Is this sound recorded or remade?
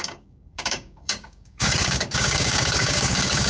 remade